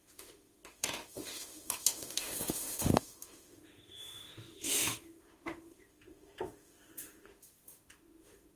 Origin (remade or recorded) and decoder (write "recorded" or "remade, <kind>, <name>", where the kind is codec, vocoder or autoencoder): remade, autoencoder, DAC-VAE